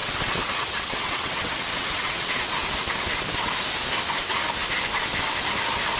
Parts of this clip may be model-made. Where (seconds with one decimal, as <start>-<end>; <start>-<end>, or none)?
0.0-2.5